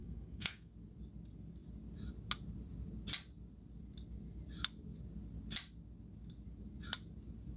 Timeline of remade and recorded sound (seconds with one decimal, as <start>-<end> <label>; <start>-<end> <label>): 0.0-0.7 remade; 0.7-7.6 recorded